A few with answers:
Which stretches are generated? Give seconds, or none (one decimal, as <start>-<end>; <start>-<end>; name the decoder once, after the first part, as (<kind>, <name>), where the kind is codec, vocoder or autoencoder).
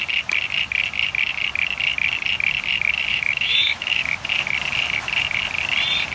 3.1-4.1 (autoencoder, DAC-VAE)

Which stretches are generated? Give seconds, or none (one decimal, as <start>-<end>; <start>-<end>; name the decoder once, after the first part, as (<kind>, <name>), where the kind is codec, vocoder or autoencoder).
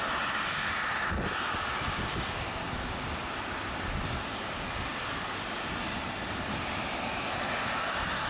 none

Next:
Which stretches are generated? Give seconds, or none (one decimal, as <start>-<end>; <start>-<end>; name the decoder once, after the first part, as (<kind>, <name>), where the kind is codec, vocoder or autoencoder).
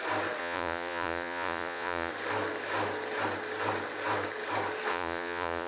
0.4-2.1 (vocoder, Vocos); 4.9-5.7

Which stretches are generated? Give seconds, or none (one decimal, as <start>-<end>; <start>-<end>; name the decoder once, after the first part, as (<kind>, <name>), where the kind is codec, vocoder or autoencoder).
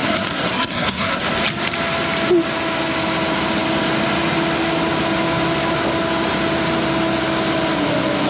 0.0-1.2 (codec, SNAC)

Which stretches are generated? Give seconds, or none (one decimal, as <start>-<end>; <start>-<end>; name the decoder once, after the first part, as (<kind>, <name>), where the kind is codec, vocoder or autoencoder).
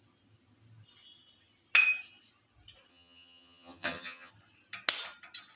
2.9-4.3 (vocoder, HiFi-GAN)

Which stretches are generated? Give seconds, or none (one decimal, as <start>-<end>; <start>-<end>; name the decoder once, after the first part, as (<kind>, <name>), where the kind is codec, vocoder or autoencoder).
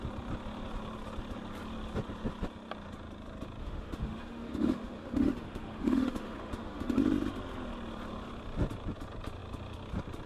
3.6-7.0 (autoencoder, DAC-VAE)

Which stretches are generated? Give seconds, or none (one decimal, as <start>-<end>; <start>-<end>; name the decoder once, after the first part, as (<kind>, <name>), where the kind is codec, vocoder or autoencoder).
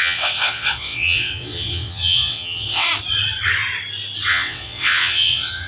0.0-2.9 (vocoder, WaveNeXt); 4.3-5.7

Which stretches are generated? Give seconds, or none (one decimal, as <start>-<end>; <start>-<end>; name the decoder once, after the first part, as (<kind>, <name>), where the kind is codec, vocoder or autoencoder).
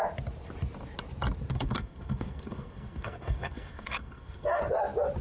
1.5-4.6 (codec, SNAC)